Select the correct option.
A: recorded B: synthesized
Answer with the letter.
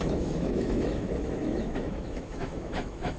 B